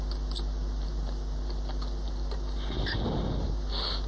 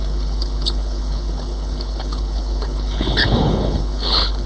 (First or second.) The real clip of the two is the first